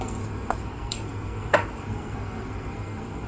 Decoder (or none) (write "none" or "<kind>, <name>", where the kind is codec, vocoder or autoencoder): codec, SNAC